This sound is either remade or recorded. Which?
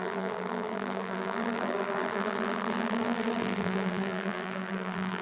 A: remade